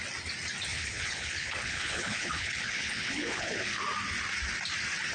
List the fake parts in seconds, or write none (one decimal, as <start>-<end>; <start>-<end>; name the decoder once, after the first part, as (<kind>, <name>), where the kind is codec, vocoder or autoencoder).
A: 0.7-3.8 (codec, HILCodec)